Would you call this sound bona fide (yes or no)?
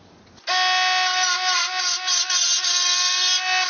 yes